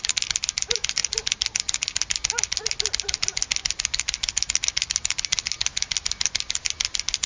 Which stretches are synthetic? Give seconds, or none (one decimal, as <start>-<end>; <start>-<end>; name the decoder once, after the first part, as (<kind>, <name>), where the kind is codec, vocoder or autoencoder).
none

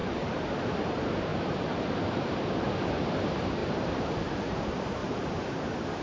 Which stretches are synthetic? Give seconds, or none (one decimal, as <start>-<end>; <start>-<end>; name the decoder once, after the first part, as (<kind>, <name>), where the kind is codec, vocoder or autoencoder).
0.8-5.0 (vocoder, BigVGAN v2)

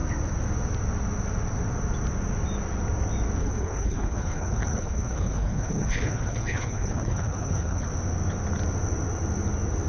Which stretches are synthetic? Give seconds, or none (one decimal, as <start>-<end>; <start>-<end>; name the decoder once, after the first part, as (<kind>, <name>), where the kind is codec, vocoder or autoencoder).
3.4-7.9 (codec, HILCodec)

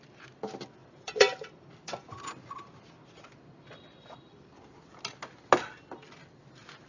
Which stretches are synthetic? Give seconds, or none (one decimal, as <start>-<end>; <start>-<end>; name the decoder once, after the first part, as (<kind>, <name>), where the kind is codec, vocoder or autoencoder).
0.8-4.9 (vocoder, BigVGAN v2)

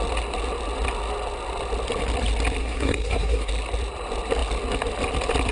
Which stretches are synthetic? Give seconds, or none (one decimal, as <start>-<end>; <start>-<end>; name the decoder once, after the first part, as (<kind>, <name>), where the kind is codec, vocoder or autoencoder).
2.6-3.5 (codec, SNAC)

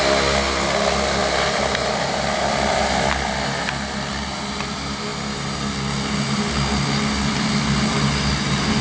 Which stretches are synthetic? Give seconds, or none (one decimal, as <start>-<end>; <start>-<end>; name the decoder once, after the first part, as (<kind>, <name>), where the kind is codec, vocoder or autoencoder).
none